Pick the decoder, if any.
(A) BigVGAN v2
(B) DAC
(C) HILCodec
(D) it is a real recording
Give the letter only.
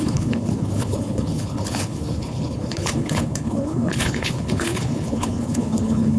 C